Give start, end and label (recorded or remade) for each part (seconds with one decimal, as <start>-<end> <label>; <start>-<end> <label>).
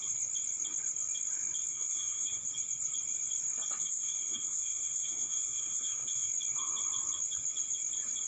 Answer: 0.0-1.7 recorded; 1.7-2.4 remade; 2.4-3.8 recorded; 3.8-6.3 remade; 6.3-8.3 recorded